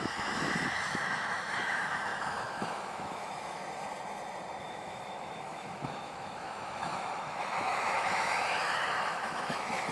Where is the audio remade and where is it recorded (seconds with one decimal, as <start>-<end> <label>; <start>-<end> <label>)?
0.0-3.6 remade; 3.6-4.6 recorded; 4.6-9.9 remade